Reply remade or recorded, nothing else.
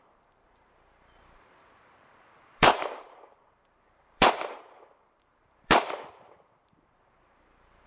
remade